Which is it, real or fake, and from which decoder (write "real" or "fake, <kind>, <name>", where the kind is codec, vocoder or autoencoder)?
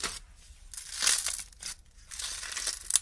real